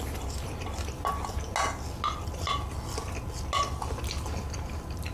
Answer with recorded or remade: recorded